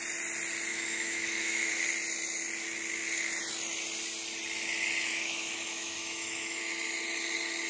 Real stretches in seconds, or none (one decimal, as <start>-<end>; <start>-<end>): 0.0-0.7; 1.7-5.1; 6.6-7.7